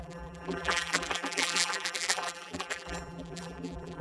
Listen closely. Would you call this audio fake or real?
fake